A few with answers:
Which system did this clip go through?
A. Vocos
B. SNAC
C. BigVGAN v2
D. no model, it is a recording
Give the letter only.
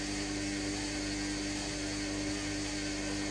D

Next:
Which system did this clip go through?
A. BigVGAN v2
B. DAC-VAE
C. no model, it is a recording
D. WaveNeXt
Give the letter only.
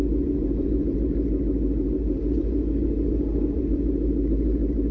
A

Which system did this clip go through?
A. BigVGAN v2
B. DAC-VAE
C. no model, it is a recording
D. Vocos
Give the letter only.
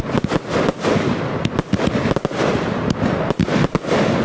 C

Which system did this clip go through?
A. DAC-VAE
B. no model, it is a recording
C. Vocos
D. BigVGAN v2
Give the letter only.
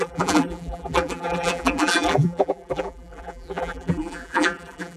D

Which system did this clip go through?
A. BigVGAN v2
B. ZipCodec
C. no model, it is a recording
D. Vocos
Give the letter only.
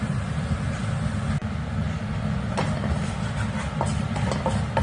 C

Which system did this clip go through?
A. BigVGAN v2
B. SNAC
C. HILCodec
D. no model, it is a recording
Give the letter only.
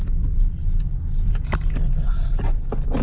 A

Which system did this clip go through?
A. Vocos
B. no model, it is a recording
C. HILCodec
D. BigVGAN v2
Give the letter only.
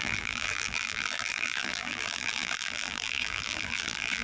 D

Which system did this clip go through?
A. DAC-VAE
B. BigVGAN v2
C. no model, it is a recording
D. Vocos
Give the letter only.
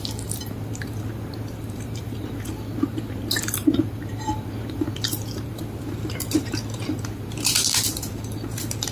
B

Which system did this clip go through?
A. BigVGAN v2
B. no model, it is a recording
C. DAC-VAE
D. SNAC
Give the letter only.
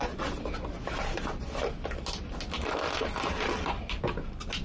B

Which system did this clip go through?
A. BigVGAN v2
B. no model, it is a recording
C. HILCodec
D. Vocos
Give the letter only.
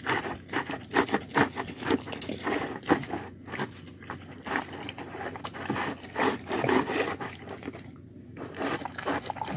B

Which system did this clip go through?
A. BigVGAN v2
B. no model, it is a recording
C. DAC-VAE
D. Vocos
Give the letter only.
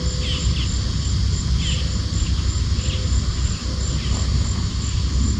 B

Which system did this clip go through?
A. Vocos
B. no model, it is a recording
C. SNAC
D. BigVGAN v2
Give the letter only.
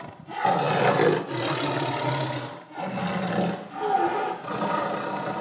B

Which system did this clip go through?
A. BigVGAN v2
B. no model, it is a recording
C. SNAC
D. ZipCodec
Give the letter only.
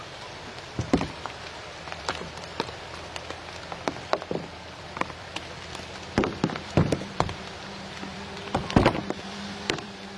A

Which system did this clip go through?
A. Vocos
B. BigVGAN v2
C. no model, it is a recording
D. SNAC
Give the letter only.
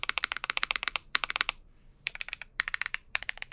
B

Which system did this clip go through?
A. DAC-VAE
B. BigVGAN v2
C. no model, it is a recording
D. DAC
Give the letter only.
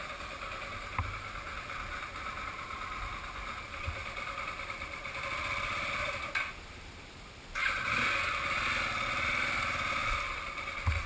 C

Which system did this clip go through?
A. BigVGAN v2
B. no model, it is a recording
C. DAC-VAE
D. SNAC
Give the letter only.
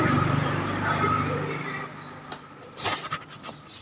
A